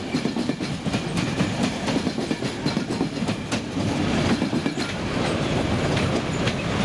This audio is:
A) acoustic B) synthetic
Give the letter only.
B